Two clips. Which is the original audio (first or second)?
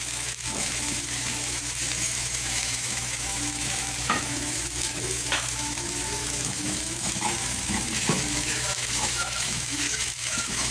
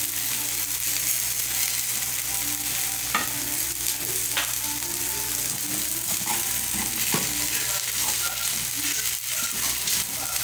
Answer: second